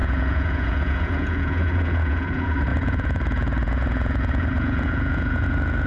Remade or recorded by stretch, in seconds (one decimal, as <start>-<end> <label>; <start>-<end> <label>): 0.0-5.9 remade